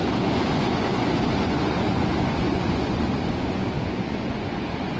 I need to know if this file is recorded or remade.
remade